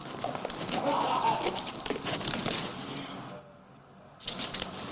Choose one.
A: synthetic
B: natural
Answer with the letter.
B